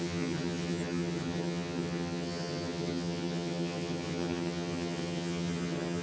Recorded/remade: remade